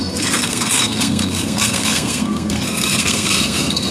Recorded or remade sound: remade